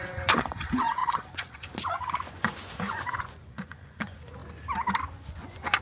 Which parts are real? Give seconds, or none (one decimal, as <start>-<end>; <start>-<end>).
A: 4.4-5.0